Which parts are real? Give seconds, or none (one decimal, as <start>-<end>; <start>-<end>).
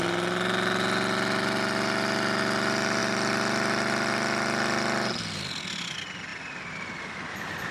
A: 0.0-6.3